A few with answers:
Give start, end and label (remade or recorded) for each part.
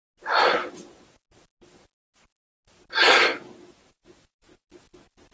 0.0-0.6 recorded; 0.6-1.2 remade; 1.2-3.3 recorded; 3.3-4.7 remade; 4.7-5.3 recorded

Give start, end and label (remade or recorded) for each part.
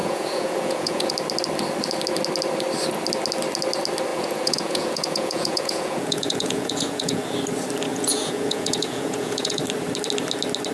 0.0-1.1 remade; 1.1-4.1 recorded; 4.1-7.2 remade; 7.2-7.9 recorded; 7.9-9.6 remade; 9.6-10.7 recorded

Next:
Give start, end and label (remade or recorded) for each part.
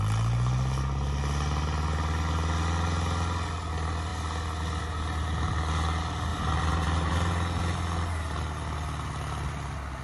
0.0-6.3 recorded; 6.3-7.3 remade; 7.3-10.0 recorded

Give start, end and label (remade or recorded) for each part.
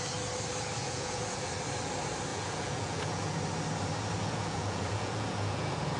0.0-0.8 recorded; 0.8-1.5 remade; 1.5-2.3 recorded; 2.3-3.3 remade; 3.3-4.2 recorded; 4.2-6.0 remade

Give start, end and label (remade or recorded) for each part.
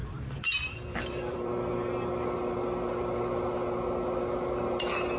0.0-1.5 remade; 1.5-5.2 recorded